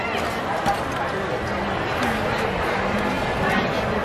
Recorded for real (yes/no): yes